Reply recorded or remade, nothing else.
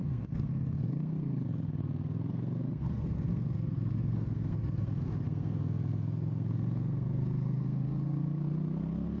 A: remade